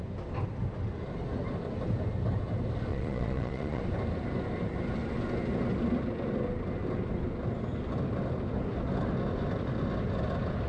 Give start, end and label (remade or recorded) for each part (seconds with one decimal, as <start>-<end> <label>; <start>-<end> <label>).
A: 0.0-2.9 recorded; 2.9-3.8 remade; 3.8-10.7 recorded